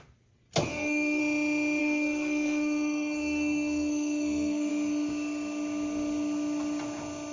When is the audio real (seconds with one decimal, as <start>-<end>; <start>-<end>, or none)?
0.0-0.7; 1.2-1.8; 4.7-7.3